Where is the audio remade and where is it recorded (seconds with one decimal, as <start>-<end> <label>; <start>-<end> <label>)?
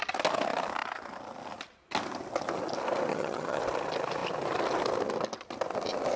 0.0-3.1 recorded; 3.1-3.6 remade; 3.6-6.2 recorded